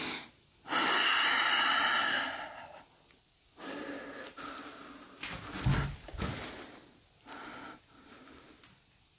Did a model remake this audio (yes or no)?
no